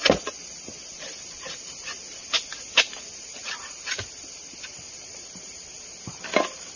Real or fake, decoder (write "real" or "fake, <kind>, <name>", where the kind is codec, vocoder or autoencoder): real